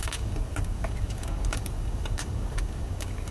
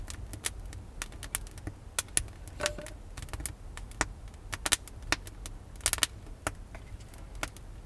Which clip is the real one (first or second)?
second